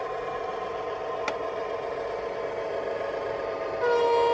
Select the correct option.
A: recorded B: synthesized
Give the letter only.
A